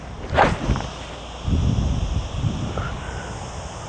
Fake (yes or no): no